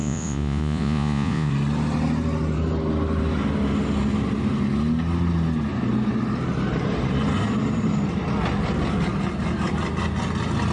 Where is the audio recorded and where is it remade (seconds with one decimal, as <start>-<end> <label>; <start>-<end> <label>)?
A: 0.0-1.5 remade; 1.5-10.7 recorded